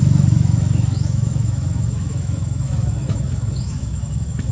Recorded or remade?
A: remade